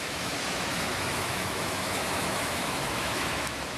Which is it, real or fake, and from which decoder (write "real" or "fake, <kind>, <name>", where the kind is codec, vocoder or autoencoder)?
fake, autoencoder, DAC-VAE